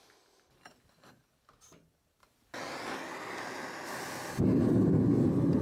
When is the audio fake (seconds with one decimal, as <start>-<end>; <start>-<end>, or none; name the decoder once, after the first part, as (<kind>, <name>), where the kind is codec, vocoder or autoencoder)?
none